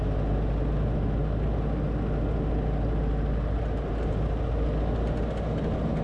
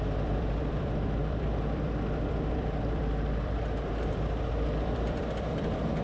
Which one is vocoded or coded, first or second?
second